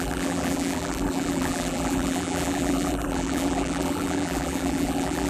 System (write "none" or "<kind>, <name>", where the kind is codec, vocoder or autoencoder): vocoder, BigVGAN v2